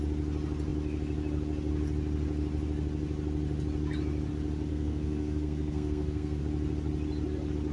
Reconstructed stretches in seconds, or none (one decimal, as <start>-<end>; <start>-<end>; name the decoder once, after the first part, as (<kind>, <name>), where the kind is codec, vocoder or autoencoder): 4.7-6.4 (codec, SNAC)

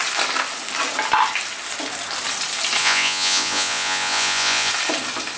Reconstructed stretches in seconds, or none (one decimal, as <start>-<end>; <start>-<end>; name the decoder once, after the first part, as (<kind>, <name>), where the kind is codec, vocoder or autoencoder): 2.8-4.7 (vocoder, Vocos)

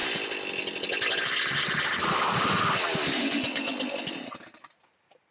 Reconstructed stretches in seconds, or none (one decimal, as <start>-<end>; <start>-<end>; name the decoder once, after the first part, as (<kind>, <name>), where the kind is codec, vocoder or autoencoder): 3.2-3.7 (vocoder, Vocos)